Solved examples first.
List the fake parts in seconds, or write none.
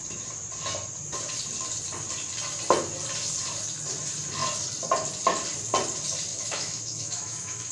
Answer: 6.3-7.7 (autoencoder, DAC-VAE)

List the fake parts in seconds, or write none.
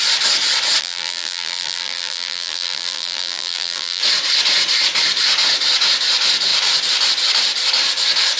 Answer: 0.8-4.0 (vocoder, BigVGAN v2)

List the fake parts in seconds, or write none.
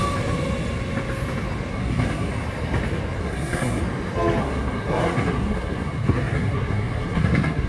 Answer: 1.7-2.3 (codec, SNAC); 3.2-3.8; 4.4-7.7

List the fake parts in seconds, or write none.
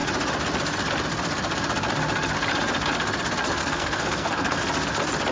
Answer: 3.6-4.6 (codec, SNAC)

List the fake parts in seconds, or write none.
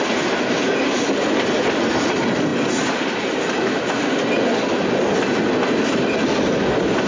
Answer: none